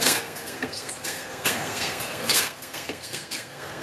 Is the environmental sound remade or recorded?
remade